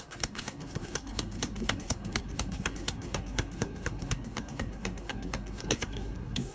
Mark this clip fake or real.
fake